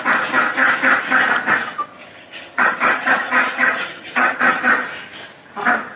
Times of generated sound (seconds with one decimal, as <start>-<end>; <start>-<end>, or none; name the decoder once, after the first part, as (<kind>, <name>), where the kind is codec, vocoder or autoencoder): 1.9-4.6 (vocoder, HiFi-GAN)